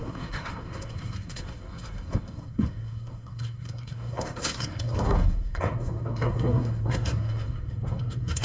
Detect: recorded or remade remade